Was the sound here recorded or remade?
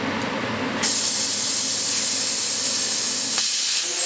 recorded